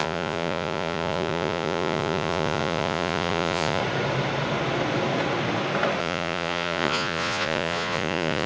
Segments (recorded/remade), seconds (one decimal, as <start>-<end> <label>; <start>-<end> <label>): 0.0-3.8 remade; 3.8-6.0 recorded; 6.0-8.5 remade